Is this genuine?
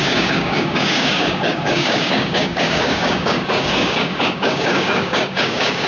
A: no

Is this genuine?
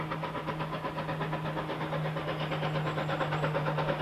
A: yes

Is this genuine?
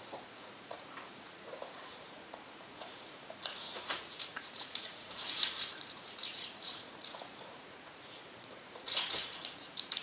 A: no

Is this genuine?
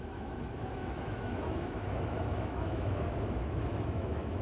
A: no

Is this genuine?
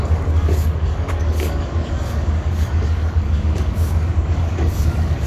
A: no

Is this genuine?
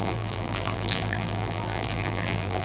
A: no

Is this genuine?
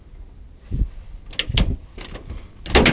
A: yes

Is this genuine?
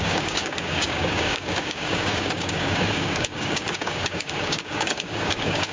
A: no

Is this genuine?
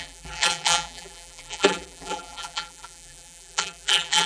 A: no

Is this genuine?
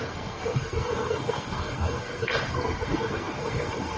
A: no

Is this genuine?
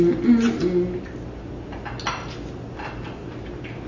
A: yes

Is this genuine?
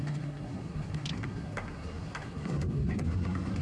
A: no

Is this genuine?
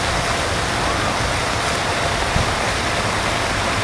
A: yes